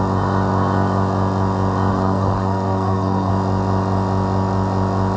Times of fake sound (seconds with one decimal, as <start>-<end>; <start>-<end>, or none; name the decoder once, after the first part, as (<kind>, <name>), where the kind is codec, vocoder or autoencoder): 1.9-3.3 (codec, SNAC)